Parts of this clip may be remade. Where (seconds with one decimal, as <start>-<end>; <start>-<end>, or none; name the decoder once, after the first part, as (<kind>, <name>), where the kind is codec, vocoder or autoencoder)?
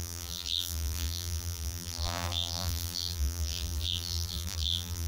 0.0-5.1 (vocoder, BigVGAN v2)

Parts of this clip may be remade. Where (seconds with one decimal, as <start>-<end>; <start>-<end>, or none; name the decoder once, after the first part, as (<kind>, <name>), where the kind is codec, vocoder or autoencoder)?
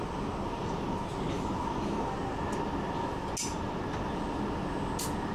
none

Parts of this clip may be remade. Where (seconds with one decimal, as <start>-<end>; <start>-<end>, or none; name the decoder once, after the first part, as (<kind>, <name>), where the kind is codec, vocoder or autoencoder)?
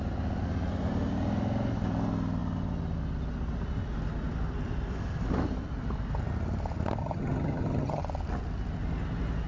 7.0-8.0 (vocoder, HiFi-GAN)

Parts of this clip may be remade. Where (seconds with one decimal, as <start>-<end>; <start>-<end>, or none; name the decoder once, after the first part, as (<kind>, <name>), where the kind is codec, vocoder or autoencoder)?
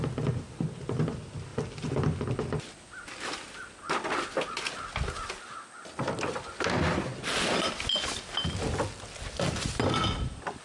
none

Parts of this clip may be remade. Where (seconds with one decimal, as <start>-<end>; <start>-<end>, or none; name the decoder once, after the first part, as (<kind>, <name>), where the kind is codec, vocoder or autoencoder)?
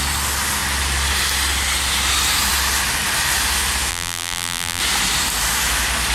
3.9-4.8 (vocoder, BigVGAN v2)